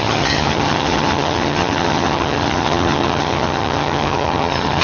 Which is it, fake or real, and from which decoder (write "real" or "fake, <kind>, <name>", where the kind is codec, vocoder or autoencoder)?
fake, vocoder, HiFi-GAN